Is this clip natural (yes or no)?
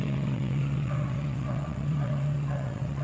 no